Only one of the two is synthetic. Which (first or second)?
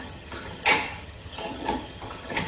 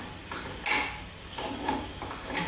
first